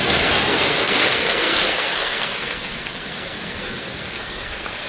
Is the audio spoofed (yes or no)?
yes